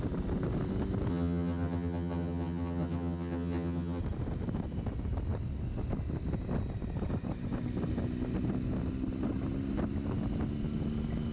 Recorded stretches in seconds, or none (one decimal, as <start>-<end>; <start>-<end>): 0.0-1.1; 4.0-11.3